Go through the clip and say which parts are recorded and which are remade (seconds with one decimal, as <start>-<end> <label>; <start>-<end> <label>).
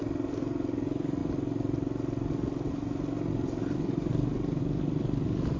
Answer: 0.0-5.6 recorded